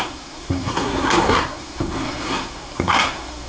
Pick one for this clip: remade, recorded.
remade